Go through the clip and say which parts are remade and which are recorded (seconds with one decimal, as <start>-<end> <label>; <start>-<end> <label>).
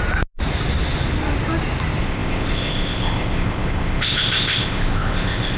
0.0-2.0 recorded; 2.0-5.6 remade